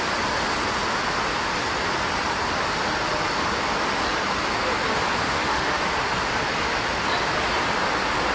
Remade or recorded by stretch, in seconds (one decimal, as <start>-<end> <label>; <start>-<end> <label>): 0.0-5.2 recorded; 5.2-5.8 remade; 5.8-8.3 recorded